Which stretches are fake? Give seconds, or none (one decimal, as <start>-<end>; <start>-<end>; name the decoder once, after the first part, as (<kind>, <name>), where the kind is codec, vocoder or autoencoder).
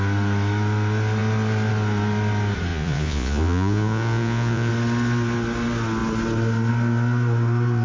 2.7-4.7 (vocoder, Vocos)